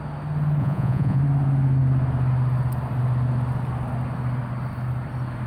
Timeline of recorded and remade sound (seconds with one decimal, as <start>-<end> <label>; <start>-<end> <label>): 0.0-0.6 recorded; 0.6-1.2 remade; 1.2-5.5 recorded